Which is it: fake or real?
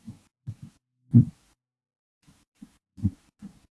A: fake